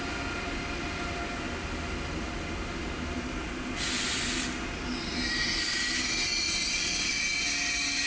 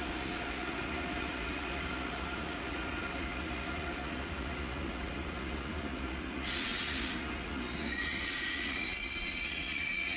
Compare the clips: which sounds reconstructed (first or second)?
second